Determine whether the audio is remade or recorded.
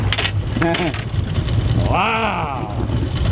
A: recorded